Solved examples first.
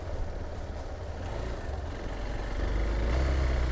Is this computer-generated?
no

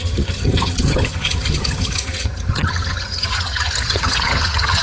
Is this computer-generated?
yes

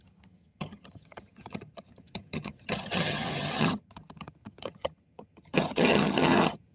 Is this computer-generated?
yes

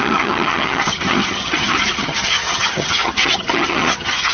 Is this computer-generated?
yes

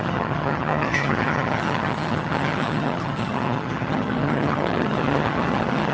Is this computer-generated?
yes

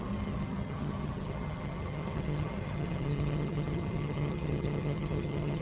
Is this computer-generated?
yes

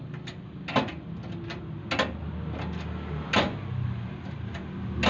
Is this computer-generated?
no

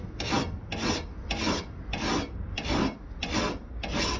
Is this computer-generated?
no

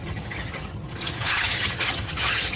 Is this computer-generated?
yes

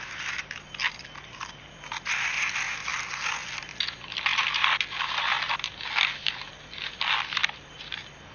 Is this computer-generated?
no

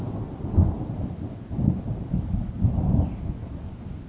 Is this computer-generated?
no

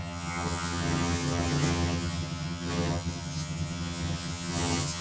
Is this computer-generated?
yes